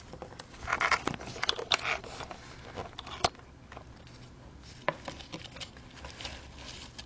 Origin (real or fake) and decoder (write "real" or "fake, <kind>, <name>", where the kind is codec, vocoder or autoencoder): real